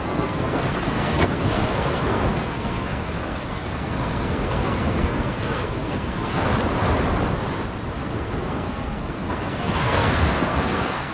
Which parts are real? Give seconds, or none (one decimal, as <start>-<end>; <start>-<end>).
6.5-8.0